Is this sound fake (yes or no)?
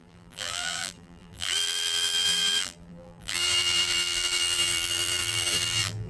yes